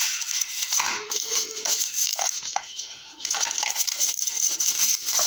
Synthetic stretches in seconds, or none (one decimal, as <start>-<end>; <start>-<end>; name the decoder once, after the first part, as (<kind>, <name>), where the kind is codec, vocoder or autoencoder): 0.0-5.3 (autoencoder, DAC-VAE)